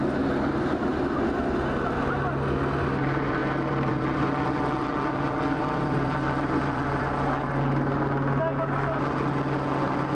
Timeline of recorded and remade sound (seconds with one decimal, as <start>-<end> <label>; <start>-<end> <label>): 0.0-3.4 recorded; 3.4-7.0 remade; 7.0-10.1 recorded